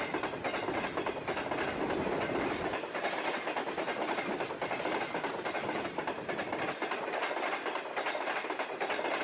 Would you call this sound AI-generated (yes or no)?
no